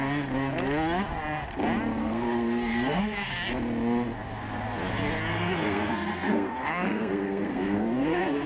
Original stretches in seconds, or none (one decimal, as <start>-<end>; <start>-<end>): 0.0-2.0; 3.5-5.3